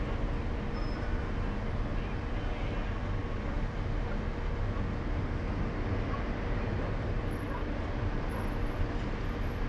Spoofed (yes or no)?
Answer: no